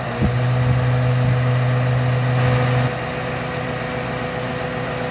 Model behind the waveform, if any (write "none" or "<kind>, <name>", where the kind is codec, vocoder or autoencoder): none